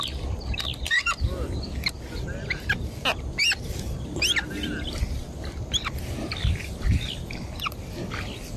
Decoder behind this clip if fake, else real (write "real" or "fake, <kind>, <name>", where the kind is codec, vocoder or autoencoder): real